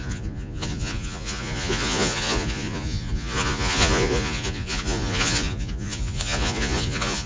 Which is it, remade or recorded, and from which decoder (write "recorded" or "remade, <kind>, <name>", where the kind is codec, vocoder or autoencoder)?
remade, vocoder, Vocos